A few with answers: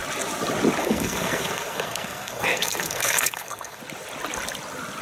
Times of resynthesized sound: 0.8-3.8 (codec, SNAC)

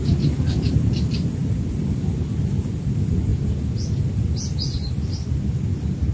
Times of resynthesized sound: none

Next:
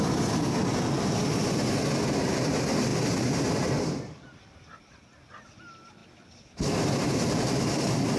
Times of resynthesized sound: none

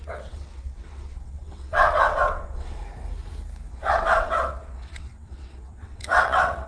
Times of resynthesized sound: 0.0-2.8 (vocoder, WaveNeXt); 3.7-6.7